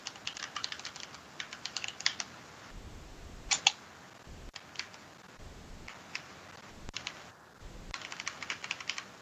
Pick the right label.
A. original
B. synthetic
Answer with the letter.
A